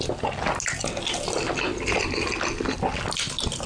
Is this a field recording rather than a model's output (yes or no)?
yes